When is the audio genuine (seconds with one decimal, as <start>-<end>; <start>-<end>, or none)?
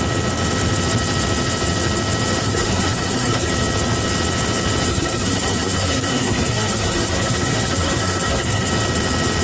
0.0-2.4; 3.5-4.9; 8.7-9.4